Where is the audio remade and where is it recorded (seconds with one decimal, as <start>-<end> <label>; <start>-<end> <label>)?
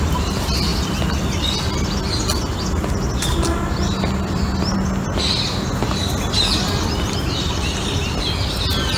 0.0-9.0 recorded